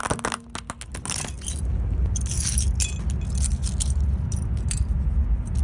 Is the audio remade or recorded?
recorded